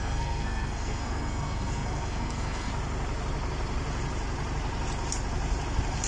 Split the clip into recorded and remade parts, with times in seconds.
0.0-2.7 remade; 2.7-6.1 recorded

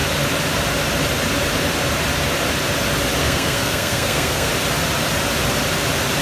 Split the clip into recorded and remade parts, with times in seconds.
0.0-3.2 recorded; 3.2-4.5 remade; 4.5-6.2 recorded

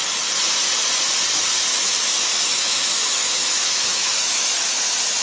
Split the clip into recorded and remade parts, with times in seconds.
0.0-1.7 recorded; 1.7-4.8 remade; 4.8-5.2 recorded

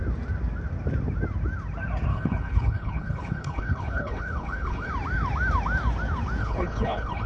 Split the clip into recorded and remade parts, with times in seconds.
0.0-2.1 recorded; 2.1-4.9 remade; 4.9-6.4 recorded; 6.4-7.3 remade

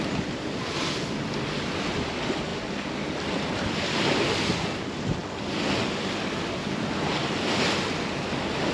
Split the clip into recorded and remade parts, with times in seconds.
0.0-8.7 recorded

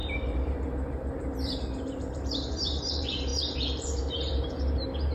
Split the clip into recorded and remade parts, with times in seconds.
0.0-5.1 remade